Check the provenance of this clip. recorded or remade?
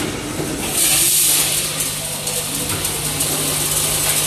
recorded